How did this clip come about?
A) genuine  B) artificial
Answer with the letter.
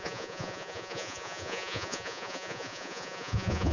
B